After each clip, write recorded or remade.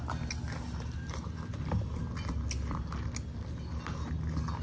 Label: recorded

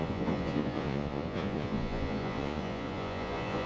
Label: remade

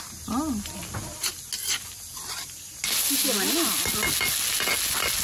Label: recorded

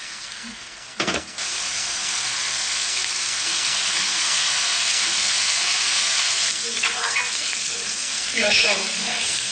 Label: remade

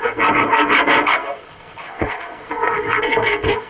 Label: remade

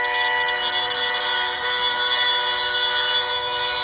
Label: recorded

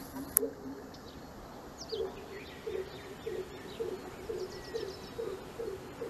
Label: recorded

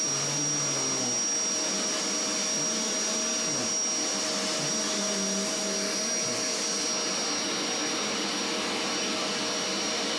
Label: recorded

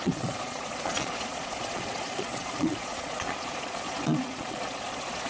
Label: remade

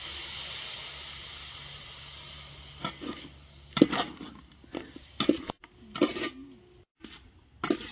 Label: recorded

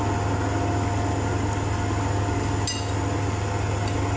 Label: recorded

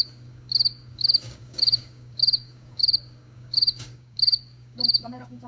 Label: remade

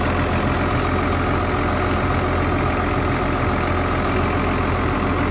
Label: recorded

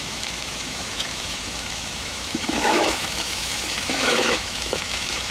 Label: remade